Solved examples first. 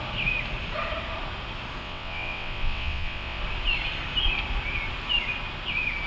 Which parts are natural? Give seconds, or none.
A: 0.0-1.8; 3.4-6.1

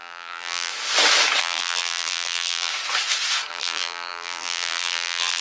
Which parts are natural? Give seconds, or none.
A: 0.7-1.4; 2.7-3.5